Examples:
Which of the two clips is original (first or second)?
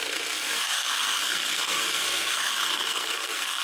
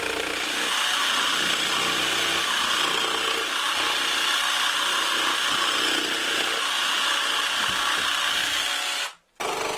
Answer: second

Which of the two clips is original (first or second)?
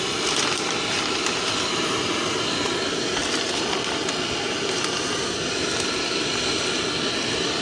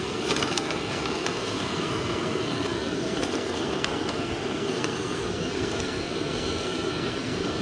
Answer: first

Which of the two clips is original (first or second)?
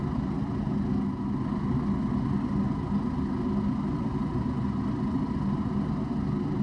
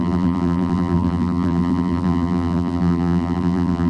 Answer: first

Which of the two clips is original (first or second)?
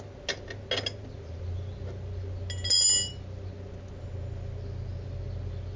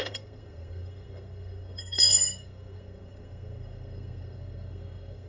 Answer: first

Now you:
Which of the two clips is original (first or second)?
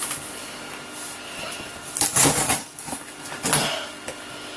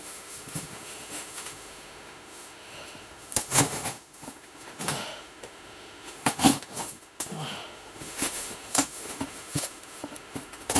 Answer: first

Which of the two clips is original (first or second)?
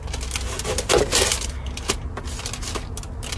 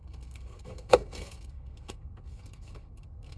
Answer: first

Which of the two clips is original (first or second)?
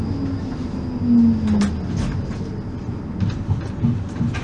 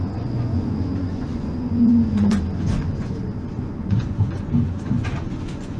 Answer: first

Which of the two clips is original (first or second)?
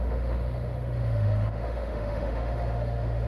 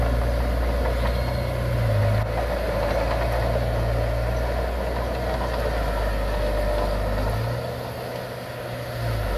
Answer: second